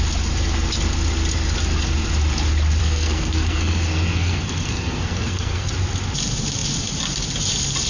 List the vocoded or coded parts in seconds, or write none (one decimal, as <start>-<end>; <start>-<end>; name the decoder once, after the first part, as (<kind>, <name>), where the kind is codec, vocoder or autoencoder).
2.8-5.7 (codec, SNAC)

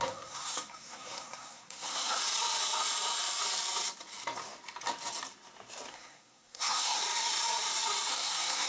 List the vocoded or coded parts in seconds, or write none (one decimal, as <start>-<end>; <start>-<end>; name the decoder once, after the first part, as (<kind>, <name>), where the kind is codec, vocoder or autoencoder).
0.0-2.2 (codec, SNAC); 5.9-7.0; 8.1-8.7

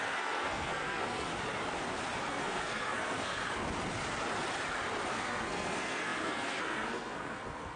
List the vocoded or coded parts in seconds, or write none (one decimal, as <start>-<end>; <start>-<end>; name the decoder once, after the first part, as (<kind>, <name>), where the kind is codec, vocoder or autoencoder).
0.0-1.3 (codec, SNAC); 2.3-3.4; 5.1-7.8

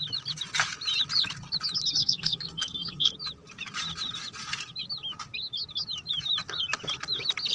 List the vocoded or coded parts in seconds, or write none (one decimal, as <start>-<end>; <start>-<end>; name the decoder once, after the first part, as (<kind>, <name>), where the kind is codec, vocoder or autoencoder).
2.0-3.1 (codec, SNAC)